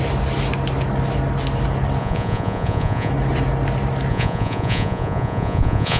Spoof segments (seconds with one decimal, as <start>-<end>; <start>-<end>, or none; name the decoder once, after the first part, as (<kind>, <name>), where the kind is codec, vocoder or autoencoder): 2.0-3.1 (vocoder, Vocos); 4.1-6.0